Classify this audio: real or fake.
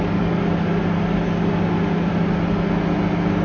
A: real